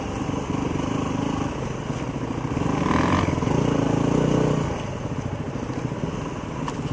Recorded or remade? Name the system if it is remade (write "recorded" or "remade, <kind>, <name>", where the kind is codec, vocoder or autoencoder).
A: recorded